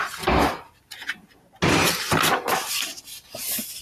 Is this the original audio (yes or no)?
yes